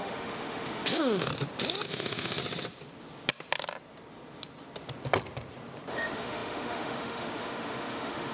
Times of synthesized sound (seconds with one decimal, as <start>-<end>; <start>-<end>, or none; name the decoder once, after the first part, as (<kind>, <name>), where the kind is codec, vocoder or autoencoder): 0.0-1.3 (autoencoder, DAC-VAE); 1.9-2.4; 5.9-8.3